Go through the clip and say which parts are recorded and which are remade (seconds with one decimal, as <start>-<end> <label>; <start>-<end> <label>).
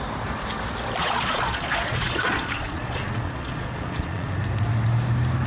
0.0-1.0 recorded; 1.0-4.3 remade; 4.3-5.5 recorded